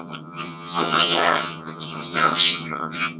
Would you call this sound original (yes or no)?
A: no